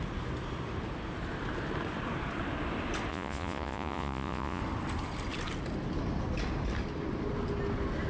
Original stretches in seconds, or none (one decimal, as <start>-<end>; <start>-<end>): 0.0-3.1; 4.6-8.1